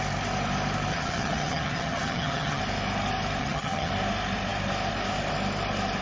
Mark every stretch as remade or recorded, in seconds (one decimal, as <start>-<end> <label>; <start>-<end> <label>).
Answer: 0.0-0.9 recorded; 0.9-2.6 remade; 2.6-3.4 recorded; 3.4-3.9 remade; 3.9-6.0 recorded